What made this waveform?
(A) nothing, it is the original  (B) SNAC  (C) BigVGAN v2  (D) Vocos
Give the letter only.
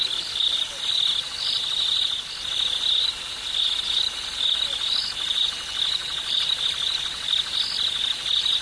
A